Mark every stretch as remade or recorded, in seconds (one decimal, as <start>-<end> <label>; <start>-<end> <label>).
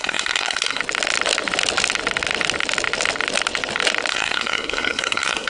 0.0-0.8 remade; 0.8-4.1 recorded; 4.1-5.5 remade